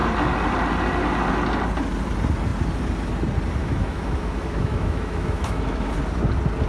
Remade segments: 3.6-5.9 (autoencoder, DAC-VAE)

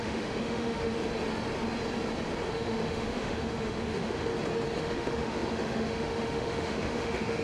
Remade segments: 0.0-1.0 (autoencoder, DAC-VAE); 2.5-4.3; 4.8-7.4

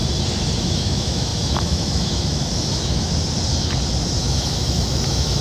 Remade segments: 0.6-3.1 (autoencoder, DAC-VAE); 4.2-5.4

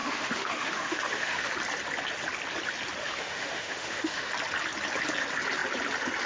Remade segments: 0.0-1.5 (autoencoder, DAC-VAE); 3.0-4.3

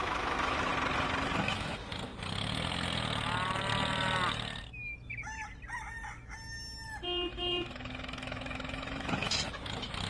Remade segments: 0.0-0.7 (autoencoder, DAC-VAE); 1.4-2.1; 7.3-10.1

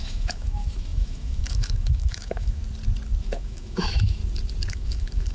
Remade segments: 0.0-2.6 (autoencoder, DAC-VAE); 3.2-4.2; 4.7-5.3

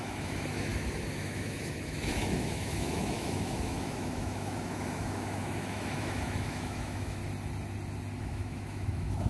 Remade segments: 0.0-7.2 (autoencoder, DAC-VAE); 8.2-9.3

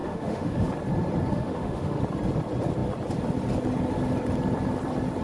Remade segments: 0.0-0.7 (autoencoder, DAC-VAE); 1.3-2.0